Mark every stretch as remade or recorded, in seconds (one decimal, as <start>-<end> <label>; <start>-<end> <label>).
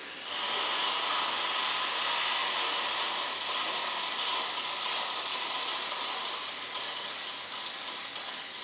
0.0-8.6 recorded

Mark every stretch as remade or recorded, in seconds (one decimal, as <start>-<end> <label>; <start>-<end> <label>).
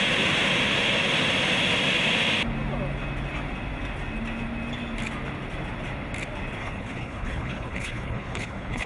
0.0-6.6 recorded; 6.6-8.9 remade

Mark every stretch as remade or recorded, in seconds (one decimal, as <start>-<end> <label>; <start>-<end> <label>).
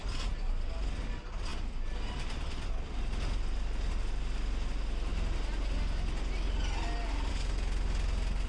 0.0-8.5 recorded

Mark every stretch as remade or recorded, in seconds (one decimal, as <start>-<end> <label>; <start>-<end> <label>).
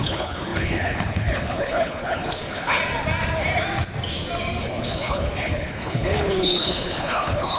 0.0-2.8 remade; 2.8-4.6 recorded; 4.6-7.6 remade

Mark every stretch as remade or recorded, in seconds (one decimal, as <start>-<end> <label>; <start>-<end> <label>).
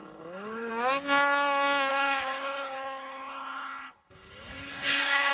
0.0-0.7 remade; 0.7-1.9 recorded; 1.9-5.3 remade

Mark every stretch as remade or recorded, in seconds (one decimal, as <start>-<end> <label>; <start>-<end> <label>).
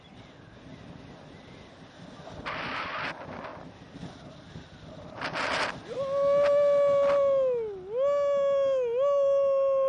0.0-9.9 recorded